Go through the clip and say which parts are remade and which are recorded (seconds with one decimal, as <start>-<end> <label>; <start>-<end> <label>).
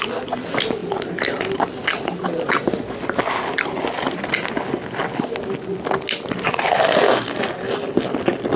0.0-8.6 recorded